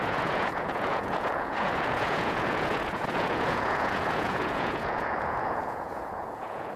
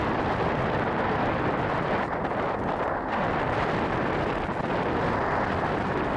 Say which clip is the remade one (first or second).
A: first